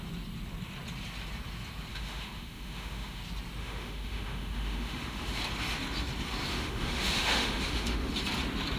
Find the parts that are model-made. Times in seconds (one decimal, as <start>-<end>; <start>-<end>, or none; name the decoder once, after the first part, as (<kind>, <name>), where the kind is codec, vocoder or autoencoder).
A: 1.9-3.2 (autoencoder, DAC-VAE); 3.6-5.4; 6.5-8.1